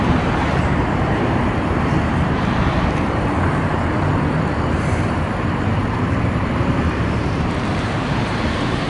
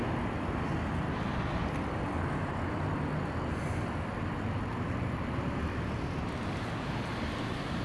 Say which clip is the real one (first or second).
second